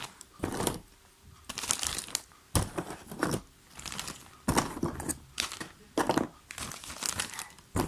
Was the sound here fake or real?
real